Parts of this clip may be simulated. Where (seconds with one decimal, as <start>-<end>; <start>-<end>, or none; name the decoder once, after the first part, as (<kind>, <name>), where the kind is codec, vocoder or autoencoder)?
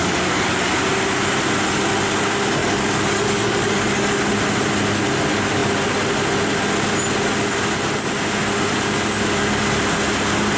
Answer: 0.0-0.7 (codec, DAC); 2.6-4.2